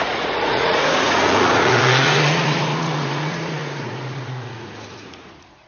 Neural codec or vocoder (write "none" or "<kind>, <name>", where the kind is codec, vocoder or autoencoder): vocoder, Vocos